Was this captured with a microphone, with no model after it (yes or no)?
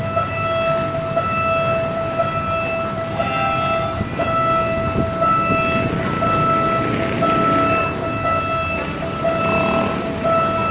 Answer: yes